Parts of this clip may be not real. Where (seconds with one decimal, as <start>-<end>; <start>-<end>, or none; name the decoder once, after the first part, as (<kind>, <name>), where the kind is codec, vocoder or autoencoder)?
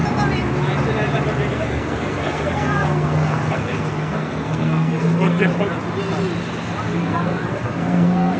1.5-5.5 (codec, SNAC); 7.0-8.4